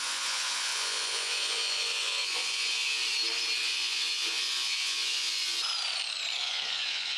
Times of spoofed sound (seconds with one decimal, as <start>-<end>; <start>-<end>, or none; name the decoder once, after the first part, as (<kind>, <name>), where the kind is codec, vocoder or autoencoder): 0.0-3.0 (vocoder, Vocos); 3.6-5.6; 6.4-7.2